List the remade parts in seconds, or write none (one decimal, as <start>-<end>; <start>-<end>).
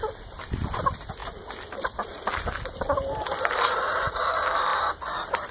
0.0-5.5